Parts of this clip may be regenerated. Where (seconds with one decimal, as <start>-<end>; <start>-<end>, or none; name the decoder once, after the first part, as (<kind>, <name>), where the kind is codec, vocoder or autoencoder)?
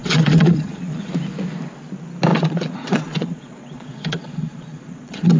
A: 0.0-1.1 (vocoder, Vocos); 2.3-5.4